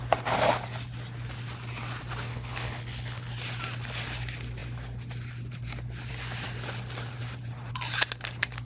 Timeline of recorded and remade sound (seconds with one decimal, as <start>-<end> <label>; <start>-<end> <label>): 0.0-2.3 recorded; 2.3-3.3 remade; 3.3-8.6 recorded